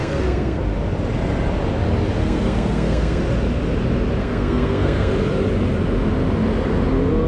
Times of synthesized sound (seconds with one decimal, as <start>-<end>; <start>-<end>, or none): 0.0-0.6; 2.2-3.2; 4.2-5.1